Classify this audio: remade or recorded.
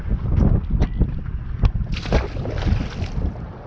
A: recorded